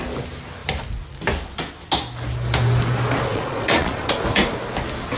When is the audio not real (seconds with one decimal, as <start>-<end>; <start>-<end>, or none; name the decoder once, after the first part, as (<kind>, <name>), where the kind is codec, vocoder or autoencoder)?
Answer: 3.3-4.1 (vocoder, Vocos)